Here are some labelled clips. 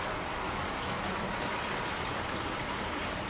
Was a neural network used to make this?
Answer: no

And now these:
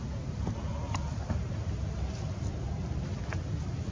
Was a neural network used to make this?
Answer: no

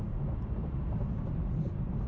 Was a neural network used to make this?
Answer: yes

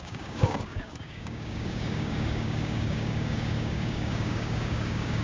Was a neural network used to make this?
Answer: yes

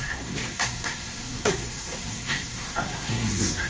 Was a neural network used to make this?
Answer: yes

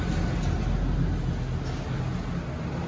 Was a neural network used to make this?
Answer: no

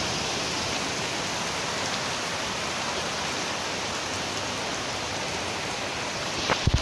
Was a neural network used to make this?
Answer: no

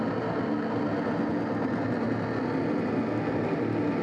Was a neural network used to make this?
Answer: no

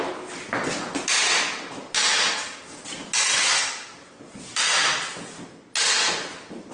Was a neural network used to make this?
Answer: no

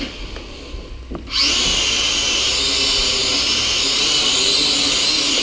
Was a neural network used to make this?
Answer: no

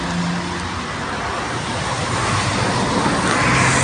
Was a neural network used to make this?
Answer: no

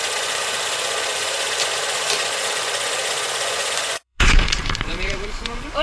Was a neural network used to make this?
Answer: yes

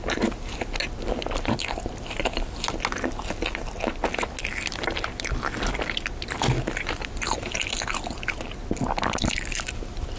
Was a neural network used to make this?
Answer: no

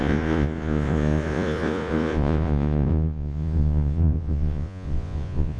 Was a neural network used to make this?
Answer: yes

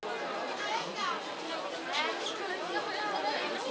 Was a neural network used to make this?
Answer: no